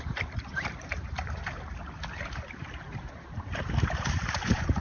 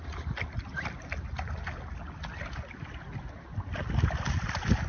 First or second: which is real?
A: second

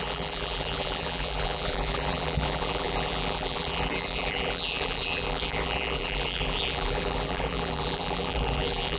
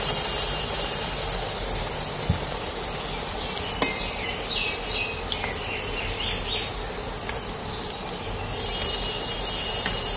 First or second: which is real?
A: second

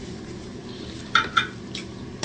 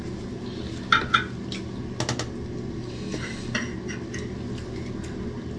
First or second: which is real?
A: second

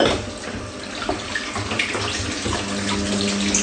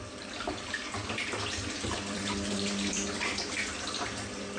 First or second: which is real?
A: first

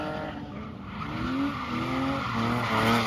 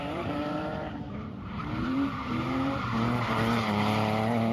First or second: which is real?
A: first